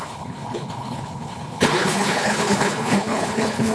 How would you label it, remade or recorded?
remade